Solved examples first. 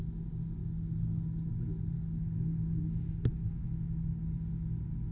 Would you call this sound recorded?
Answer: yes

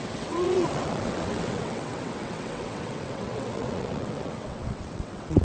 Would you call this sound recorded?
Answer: no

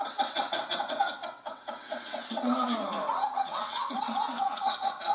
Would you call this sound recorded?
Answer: no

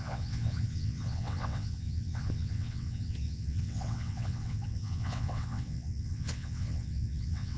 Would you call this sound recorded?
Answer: no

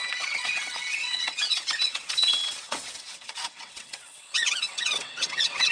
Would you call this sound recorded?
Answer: no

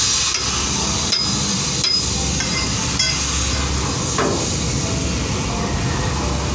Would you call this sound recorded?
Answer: yes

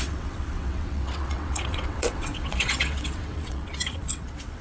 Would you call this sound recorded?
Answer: no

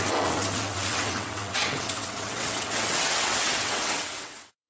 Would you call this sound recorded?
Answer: no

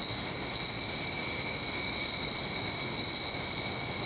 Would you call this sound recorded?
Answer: yes